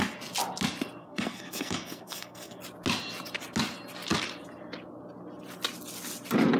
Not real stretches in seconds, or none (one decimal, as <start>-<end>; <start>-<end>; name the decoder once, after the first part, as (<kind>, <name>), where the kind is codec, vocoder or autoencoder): 1.0-2.6 (codec, SNAC)